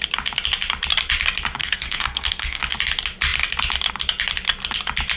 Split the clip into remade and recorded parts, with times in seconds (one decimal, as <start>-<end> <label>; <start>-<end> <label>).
0.0-1.6 recorded; 1.6-2.6 remade; 2.6-5.2 recorded